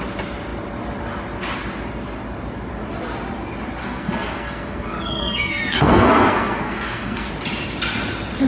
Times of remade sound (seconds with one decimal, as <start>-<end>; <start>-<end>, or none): 3.8-7.3